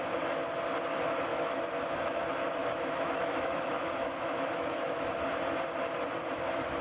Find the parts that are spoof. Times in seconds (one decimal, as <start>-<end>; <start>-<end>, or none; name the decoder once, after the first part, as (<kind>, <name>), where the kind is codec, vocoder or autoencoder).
1.3-2.2 (autoencoder, DAC-VAE); 2.6-5.1